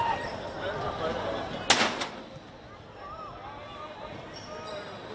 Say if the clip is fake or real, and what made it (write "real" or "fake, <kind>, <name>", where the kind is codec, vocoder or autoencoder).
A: real